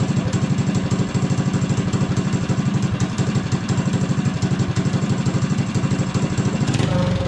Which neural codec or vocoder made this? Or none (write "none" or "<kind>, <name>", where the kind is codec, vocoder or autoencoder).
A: none